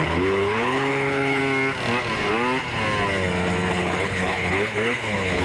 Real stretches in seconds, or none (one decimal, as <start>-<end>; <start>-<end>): 1.4-3.7